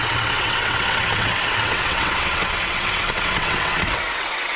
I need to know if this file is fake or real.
fake